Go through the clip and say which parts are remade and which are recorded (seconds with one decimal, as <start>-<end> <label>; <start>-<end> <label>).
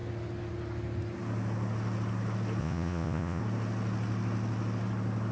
0.0-2.6 recorded; 2.6-3.4 remade; 3.4-5.3 recorded